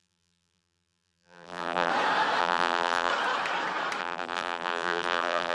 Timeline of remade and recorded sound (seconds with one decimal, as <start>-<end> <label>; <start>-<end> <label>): 0.0-1.9 remade; 1.9-2.4 recorded; 2.4-3.1 remade; 3.1-4.0 recorded; 4.0-5.5 remade